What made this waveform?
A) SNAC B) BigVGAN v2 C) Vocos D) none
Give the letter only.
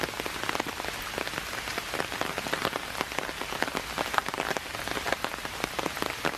D